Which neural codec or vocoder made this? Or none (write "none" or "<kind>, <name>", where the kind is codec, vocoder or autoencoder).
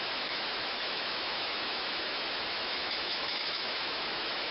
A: autoencoder, DAC-VAE